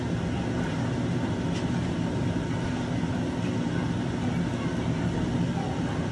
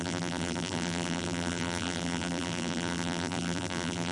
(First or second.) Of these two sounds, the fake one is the second